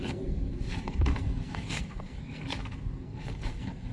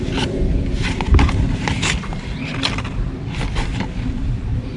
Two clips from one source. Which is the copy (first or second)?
first